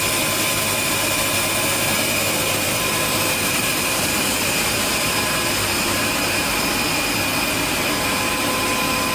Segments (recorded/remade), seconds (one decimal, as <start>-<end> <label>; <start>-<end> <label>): 0.0-2.4 recorded; 2.4-6.6 remade; 6.6-9.1 recorded